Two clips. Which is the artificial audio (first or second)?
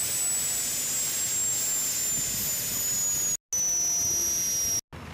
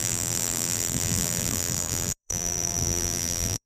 second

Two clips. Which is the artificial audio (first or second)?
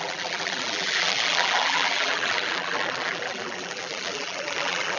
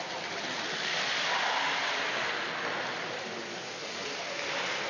first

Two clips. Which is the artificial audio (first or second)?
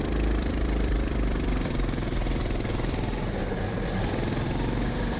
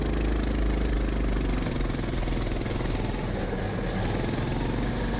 first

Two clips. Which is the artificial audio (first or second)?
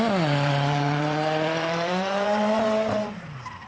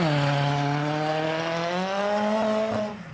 first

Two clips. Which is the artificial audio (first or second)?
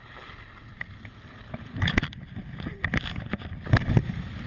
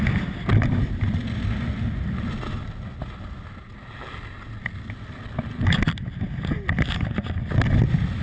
first